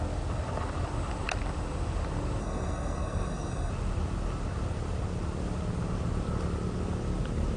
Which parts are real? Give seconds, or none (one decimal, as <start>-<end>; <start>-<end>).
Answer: 0.0-2.4; 3.7-7.6